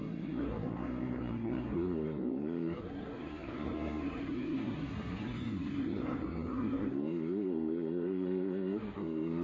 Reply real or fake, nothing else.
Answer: fake